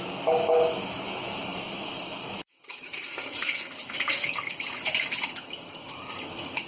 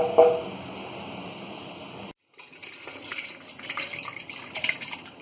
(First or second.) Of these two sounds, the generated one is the first